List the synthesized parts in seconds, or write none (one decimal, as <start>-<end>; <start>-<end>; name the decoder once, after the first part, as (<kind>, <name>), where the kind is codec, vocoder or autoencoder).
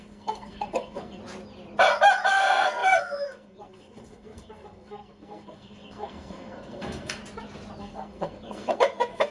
0.0-1.2 (codec, SNAC); 2.3-7.2; 7.8-9.3